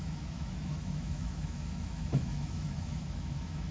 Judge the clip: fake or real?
fake